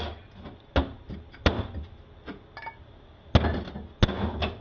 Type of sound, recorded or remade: recorded